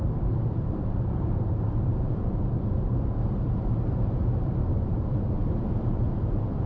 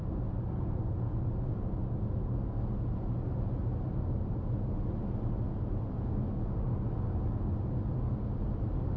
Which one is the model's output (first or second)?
first